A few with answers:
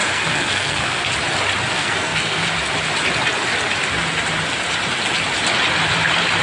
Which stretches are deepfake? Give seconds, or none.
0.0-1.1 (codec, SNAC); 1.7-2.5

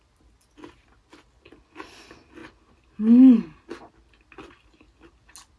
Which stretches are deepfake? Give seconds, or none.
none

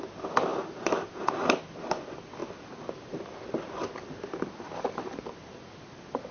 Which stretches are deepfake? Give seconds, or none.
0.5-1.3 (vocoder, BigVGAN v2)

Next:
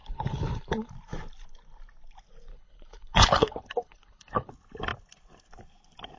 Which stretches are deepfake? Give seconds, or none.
0.0-0.9 (codec, HILCodec); 2.5-4.5

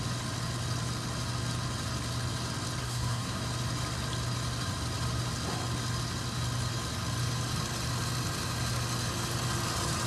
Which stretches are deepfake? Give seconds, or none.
2.8-3.4 (codec, SNAC)

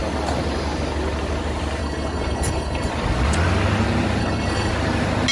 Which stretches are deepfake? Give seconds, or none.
1.8-2.9 (codec, HILCodec); 4.2-4.7